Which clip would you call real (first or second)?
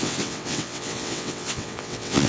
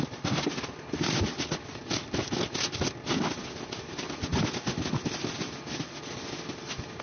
second